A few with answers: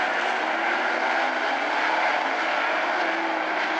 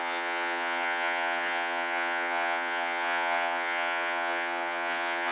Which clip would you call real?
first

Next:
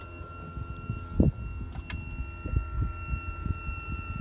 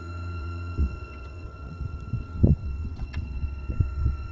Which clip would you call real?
first